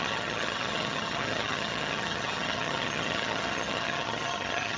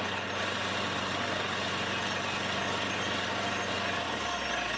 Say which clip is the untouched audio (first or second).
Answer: second